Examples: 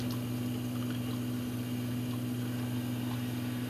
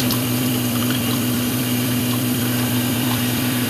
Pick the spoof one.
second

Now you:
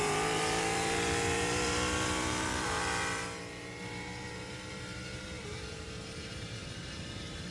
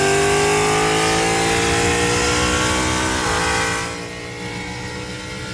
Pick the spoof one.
first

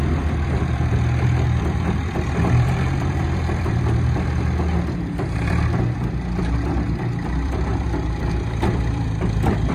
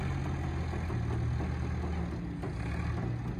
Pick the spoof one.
first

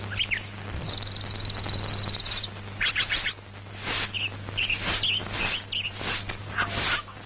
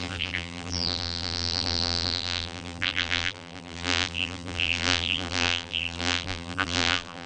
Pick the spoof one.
second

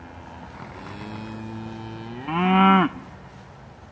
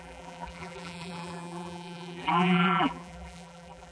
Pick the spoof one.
second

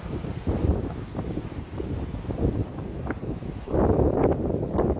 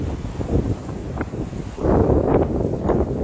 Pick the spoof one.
first